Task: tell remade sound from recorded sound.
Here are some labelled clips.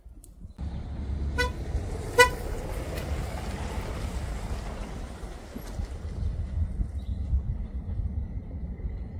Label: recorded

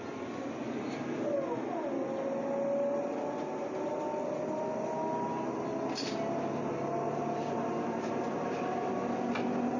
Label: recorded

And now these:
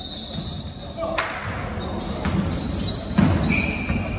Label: recorded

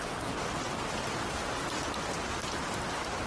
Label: recorded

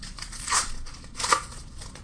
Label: remade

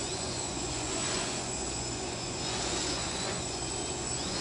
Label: remade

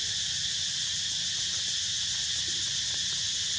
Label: recorded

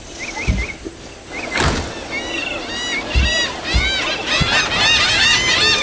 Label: recorded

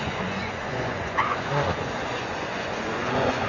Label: remade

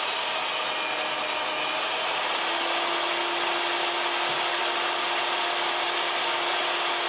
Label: recorded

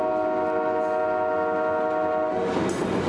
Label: recorded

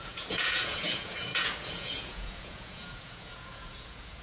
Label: remade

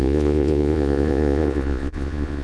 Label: remade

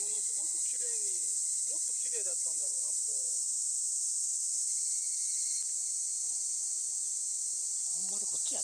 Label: remade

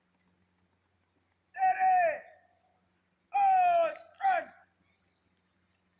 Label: recorded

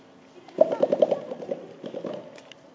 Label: recorded